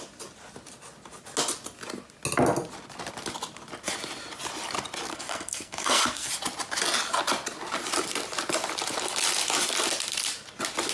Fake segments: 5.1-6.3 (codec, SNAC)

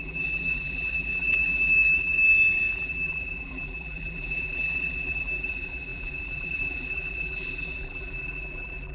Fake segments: 0.0-2.2 (vocoder, BigVGAN v2); 2.7-8.9